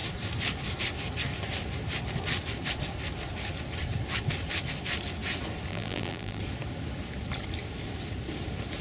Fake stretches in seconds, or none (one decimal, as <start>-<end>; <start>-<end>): 5.7-6.4